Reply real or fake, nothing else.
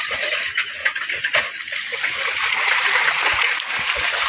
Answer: real